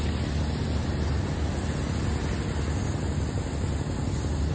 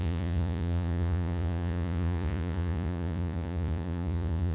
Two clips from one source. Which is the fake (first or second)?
second